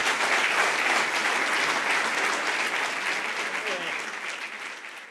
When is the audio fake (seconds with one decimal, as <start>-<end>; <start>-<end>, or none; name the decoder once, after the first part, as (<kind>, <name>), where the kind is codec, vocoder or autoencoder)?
none